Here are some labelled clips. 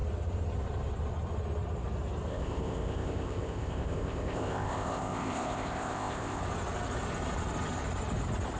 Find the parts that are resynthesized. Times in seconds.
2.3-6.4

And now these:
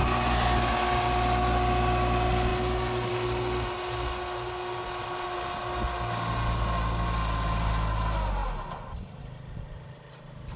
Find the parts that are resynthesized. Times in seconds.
none

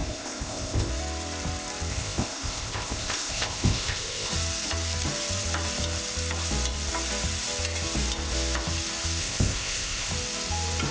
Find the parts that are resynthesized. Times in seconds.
0.0-0.9; 1.9-4.3; 9.2-10.1

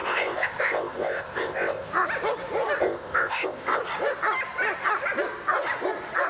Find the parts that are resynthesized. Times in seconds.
0.0-1.9; 2.8-3.8